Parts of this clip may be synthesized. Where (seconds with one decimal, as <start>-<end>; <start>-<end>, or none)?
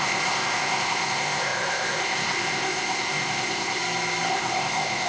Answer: 0.0-3.8; 4.3-5.1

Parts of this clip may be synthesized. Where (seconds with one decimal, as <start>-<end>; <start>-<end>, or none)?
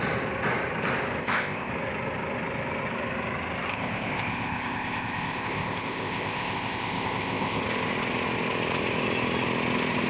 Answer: 1.2-1.7; 3.7-7.6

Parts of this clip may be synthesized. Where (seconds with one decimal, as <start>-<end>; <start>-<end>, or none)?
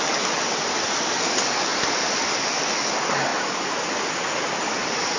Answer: none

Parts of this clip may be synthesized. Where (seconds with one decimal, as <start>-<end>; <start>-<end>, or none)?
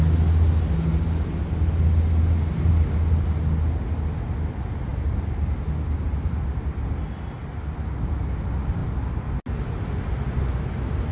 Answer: none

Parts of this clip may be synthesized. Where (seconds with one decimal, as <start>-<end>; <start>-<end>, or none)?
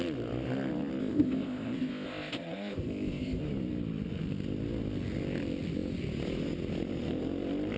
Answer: 1.0-3.4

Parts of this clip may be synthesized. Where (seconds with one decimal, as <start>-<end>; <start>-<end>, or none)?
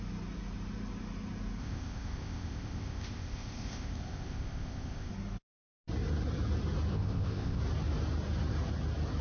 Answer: 1.6-5.1; 6.9-7.6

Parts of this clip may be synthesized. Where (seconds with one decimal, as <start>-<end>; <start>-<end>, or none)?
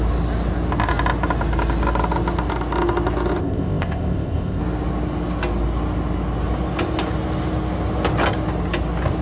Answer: 3.4-4.6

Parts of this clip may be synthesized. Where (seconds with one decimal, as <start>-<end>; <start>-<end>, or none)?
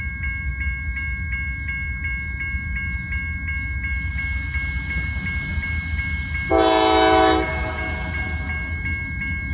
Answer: none